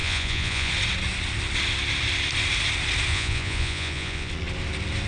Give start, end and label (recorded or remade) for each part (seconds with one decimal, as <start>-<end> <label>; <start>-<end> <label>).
0.0-0.7 remade; 0.7-3.1 recorded; 3.1-4.3 remade; 4.3-5.1 recorded